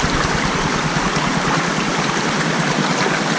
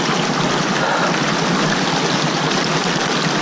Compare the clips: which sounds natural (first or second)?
second